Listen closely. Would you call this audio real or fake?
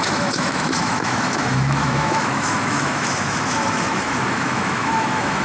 fake